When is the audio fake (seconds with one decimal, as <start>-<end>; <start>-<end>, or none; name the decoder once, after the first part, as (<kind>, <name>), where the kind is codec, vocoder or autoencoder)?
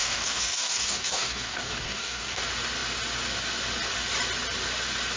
0.0-2.4 (codec, DAC)